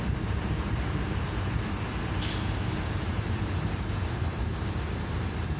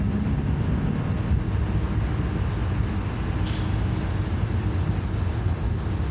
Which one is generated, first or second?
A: first